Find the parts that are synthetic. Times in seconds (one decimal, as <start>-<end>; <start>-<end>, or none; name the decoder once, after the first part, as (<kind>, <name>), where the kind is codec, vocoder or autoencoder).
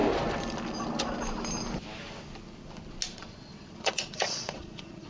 3.1-5.1 (vocoder, Vocos)